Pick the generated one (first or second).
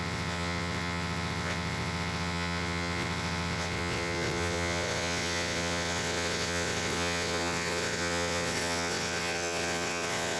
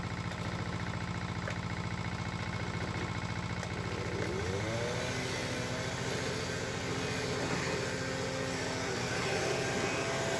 first